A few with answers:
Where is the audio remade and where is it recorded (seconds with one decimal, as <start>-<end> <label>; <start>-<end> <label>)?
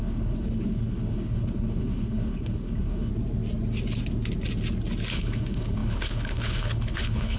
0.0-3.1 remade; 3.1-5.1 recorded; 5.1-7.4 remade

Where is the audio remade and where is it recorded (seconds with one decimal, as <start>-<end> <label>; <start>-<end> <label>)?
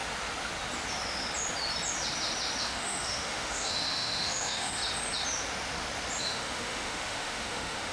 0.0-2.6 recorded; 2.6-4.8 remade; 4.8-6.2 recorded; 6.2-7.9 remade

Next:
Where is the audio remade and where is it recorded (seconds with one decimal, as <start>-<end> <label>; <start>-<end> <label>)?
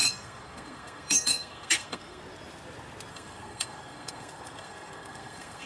0.0-2.2 remade; 2.2-3.1 recorded; 3.1-5.7 remade